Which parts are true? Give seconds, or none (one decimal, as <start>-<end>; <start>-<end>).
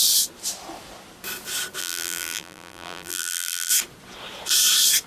0.0-1.8; 3.7-5.1